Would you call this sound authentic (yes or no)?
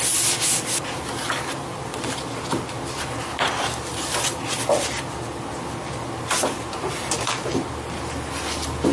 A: yes